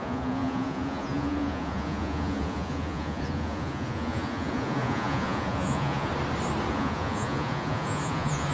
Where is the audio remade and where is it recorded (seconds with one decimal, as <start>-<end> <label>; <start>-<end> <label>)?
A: 0.0-6.1 remade; 6.1-6.7 recorded; 6.7-8.5 remade